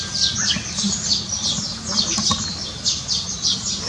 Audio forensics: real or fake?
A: real